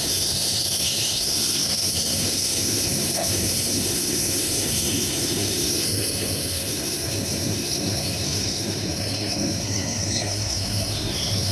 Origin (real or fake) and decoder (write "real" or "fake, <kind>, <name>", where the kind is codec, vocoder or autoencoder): fake, codec, SNAC